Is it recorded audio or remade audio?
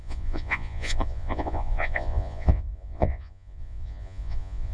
remade